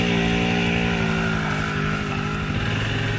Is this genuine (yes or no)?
yes